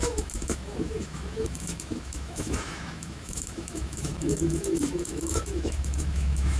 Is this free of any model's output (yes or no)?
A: no